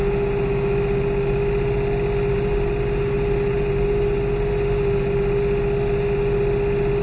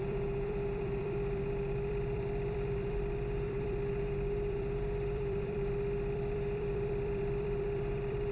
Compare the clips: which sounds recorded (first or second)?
first